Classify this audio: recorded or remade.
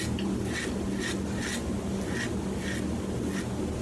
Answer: recorded